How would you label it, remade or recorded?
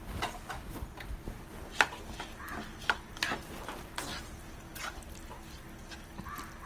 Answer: recorded